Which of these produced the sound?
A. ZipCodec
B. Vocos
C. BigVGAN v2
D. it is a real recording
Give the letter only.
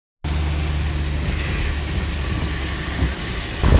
D